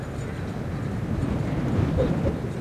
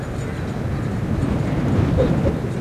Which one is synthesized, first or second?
first